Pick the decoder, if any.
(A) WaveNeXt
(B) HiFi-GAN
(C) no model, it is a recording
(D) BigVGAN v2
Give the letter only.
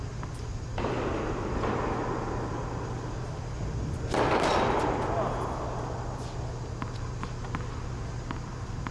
C